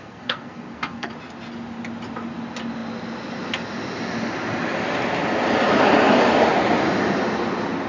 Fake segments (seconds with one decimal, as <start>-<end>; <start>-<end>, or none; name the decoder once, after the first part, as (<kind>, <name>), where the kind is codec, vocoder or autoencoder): 0.0-1.1 (codec, SNAC)